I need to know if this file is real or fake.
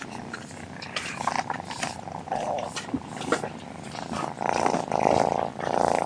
real